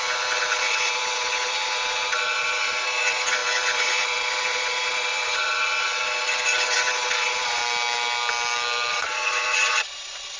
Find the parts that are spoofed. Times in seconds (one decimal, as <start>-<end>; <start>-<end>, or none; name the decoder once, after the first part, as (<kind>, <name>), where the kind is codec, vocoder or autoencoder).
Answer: 0.0-7.6 (vocoder, Vocos); 8.9-10.4